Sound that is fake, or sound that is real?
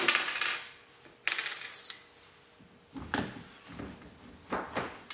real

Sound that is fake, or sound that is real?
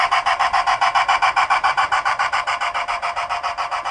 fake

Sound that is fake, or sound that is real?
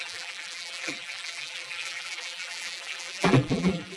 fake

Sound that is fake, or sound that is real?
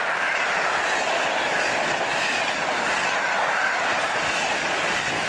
real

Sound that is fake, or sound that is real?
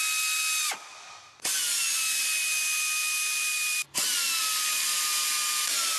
real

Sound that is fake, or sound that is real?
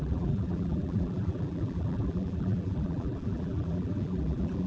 fake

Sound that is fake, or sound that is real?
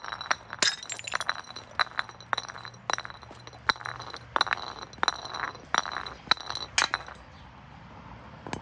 real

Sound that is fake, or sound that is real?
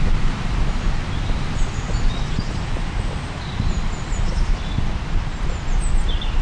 real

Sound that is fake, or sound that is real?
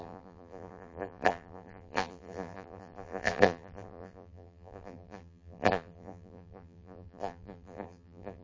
fake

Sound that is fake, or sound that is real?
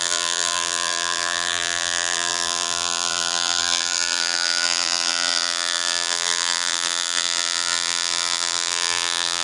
fake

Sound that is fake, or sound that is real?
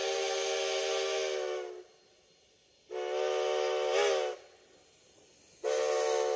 real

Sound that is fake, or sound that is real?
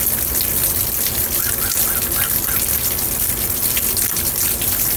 real